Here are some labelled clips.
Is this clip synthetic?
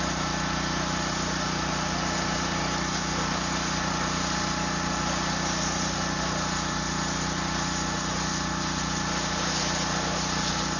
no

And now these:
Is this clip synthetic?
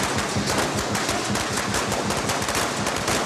no